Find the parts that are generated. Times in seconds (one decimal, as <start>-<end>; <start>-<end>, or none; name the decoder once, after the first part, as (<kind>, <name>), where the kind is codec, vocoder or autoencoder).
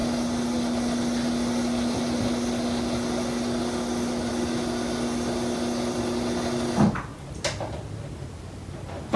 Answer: none